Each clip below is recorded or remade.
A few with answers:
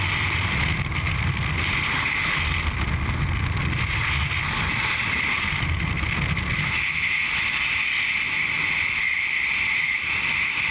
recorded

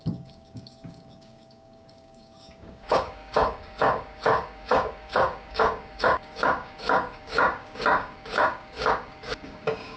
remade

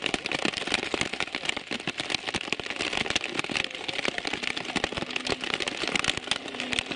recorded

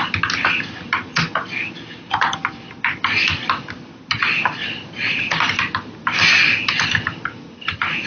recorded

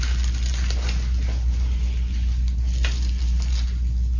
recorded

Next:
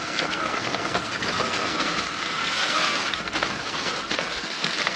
remade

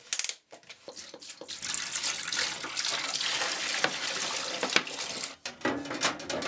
recorded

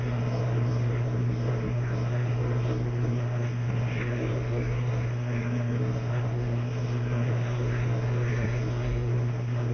remade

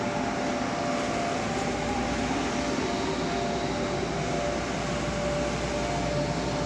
recorded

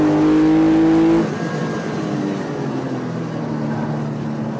recorded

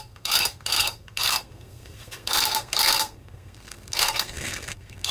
remade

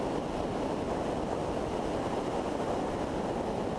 recorded